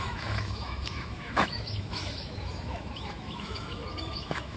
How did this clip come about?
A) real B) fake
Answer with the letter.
B